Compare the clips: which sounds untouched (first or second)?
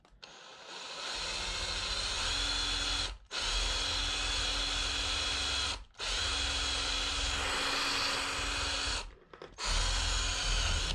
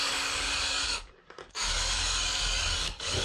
first